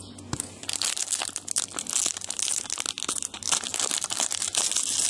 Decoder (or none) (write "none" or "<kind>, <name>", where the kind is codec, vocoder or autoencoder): none